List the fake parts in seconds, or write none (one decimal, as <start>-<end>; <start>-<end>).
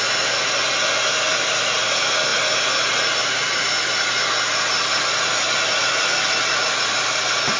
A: none